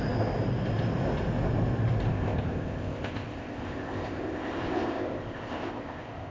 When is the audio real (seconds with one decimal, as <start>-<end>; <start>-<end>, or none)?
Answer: 0.0-2.1